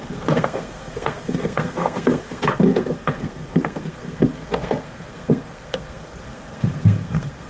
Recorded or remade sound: remade